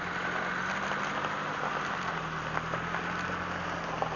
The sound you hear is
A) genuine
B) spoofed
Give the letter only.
A